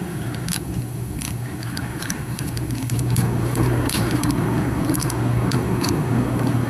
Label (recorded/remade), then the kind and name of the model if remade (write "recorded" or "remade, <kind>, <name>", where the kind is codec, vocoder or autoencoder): remade, codec, SNAC